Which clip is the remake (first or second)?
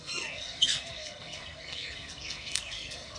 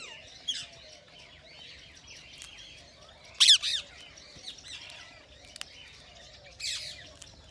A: first